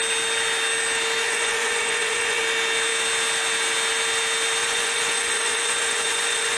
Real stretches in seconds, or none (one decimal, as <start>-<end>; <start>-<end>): 0.0-1.2; 2.4-4.6